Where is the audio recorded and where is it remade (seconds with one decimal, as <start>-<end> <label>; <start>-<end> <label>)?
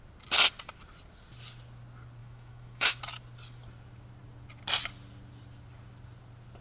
0.0-2.2 recorded; 2.2-3.0 remade; 3.0-6.6 recorded